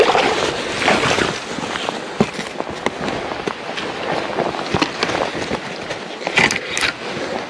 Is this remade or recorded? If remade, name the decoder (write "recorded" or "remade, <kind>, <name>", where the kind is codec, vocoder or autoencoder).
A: recorded